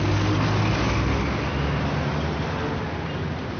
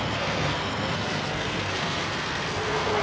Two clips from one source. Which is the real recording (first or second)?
first